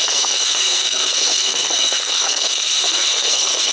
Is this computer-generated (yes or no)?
yes